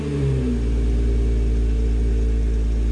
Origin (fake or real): real